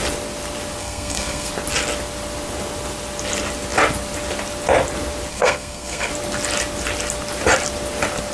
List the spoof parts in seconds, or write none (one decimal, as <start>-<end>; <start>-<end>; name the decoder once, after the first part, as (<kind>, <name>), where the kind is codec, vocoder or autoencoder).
0.8-1.5 (codec, SNAC); 5.3-6.1